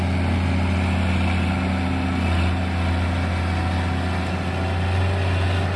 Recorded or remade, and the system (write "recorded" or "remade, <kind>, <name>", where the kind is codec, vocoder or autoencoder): recorded